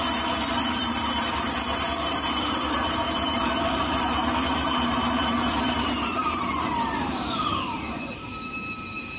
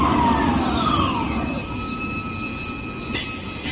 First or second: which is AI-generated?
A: first